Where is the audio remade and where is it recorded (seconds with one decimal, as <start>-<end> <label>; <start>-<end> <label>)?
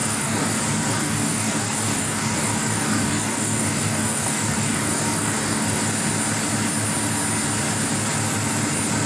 0.0-0.5 remade; 0.5-0.9 recorded; 0.9-5.8 remade; 5.8-9.1 recorded